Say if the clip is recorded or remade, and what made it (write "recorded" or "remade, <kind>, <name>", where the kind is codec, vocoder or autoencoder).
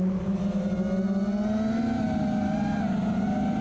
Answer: recorded